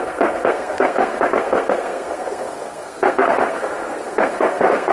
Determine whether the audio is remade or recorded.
remade